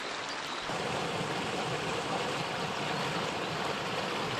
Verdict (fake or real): fake